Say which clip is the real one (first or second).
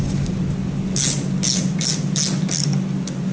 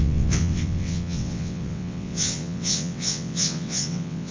first